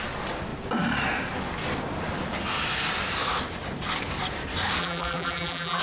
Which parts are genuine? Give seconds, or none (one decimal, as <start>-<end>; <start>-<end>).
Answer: 0.0-4.8